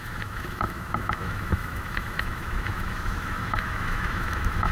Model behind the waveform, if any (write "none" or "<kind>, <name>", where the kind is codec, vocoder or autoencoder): autoencoder, DAC-VAE